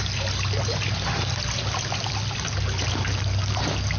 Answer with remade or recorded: recorded